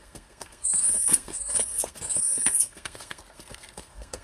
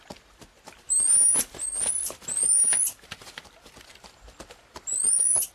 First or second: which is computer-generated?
first